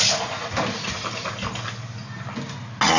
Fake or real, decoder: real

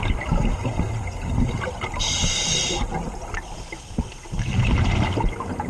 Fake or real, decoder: real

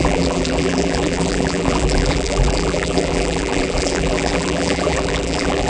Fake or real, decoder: fake, vocoder, BigVGAN v2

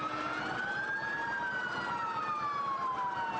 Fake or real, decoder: real